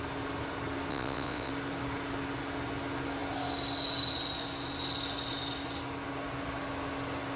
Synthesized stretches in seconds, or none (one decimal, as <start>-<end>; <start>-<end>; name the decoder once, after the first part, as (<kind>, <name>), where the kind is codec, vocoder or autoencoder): 0.9-1.5 (vocoder, WaveNeXt)